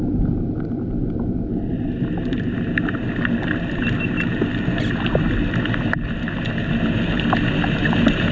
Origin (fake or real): real